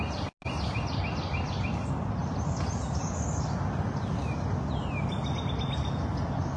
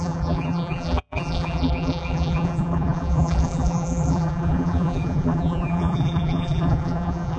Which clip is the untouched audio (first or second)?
first